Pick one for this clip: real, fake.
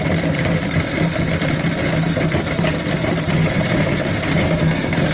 fake